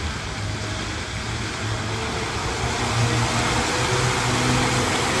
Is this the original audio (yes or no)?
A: yes